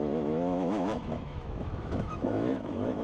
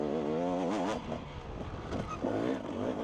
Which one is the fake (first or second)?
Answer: first